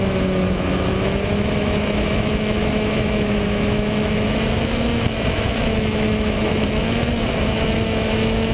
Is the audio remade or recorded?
remade